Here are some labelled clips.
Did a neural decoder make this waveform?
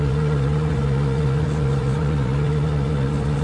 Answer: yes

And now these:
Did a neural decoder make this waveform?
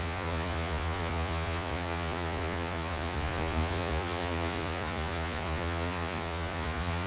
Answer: yes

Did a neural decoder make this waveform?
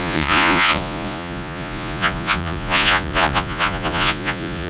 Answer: yes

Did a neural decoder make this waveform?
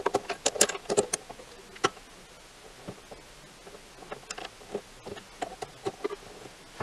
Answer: no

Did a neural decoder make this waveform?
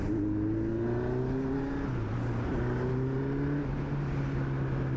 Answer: no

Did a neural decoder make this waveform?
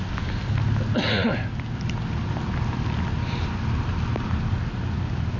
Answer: no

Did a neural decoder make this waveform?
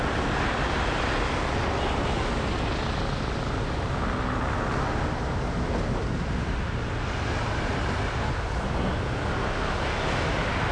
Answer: no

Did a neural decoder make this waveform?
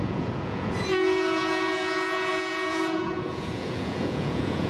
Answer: yes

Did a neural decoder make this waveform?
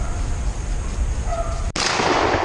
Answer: no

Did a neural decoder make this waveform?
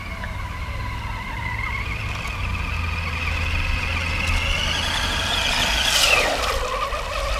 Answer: no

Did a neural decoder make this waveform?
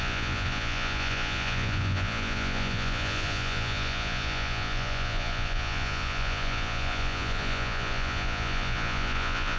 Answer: yes